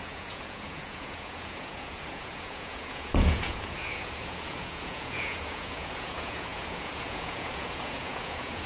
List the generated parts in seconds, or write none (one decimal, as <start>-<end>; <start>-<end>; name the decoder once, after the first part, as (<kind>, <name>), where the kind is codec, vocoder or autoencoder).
0.0-8.7 (vocoder, Vocos)